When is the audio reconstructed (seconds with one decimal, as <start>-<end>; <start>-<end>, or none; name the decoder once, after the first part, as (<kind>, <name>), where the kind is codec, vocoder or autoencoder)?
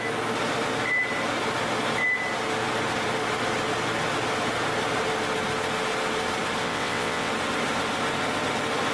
6.6-7.3 (vocoder, WaveNeXt)